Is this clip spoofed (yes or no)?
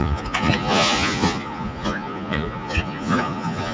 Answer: yes